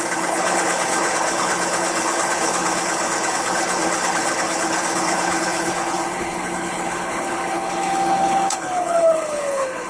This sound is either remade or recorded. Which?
remade